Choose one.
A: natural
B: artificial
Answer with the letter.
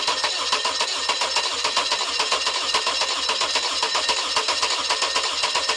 A